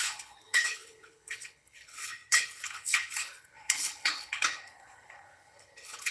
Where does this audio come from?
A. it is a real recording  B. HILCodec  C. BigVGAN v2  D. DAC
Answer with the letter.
B